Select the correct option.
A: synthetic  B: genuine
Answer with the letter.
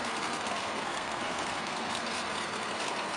A